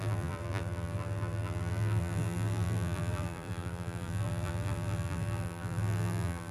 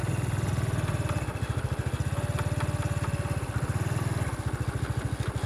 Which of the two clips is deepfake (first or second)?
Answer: first